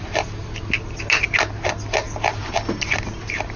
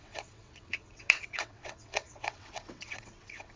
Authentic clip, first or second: first